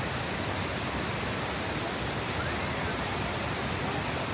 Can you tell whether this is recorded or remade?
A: recorded